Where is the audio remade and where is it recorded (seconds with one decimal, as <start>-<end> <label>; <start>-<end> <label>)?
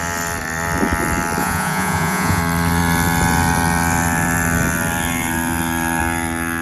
0.0-1.4 recorded; 1.4-2.4 remade; 2.4-6.6 recorded